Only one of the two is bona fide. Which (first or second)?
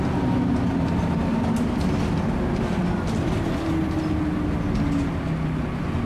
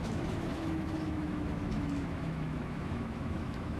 first